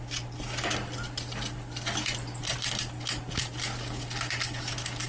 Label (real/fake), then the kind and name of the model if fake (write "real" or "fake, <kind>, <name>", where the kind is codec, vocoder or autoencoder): real